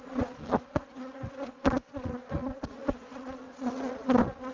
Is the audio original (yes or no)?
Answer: no